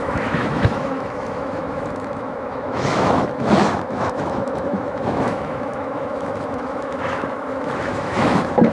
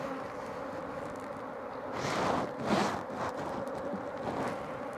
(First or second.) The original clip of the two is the second